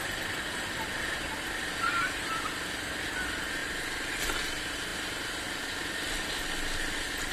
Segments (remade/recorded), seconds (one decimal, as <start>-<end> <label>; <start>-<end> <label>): 0.0-7.3 recorded